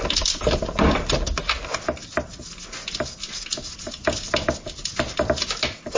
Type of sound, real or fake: real